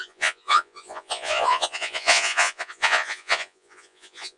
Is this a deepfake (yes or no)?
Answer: yes